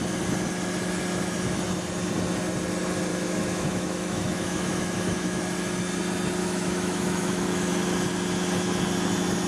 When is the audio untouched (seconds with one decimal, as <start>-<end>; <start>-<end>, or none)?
0.0-3.1; 5.4-6.4; 7.7-9.5